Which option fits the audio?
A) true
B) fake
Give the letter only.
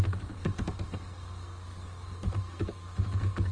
B